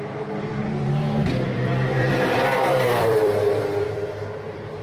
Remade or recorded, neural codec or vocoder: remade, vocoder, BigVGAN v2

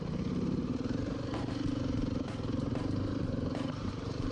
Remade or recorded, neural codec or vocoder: remade, vocoder, BigVGAN v2